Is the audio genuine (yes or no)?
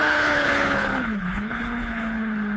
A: no